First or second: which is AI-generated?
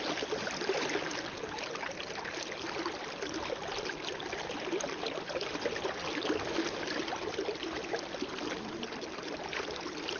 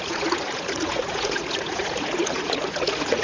second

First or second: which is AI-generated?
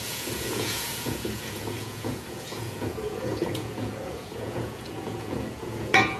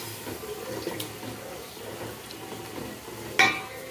first